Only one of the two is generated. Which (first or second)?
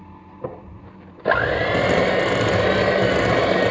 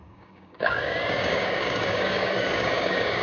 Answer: second